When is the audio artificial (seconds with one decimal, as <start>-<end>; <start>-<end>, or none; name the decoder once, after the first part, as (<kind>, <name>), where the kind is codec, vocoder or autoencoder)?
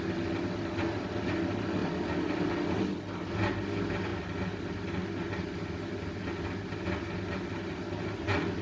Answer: none